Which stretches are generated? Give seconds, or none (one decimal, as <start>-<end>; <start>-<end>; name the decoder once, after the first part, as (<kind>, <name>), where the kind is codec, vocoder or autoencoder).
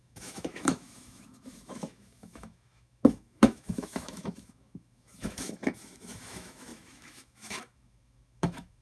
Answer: 0.0-8.8 (autoencoder, DAC-VAE)